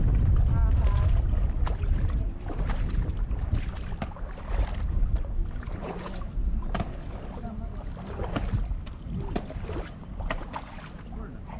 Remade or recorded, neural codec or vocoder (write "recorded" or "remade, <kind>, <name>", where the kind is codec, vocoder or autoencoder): recorded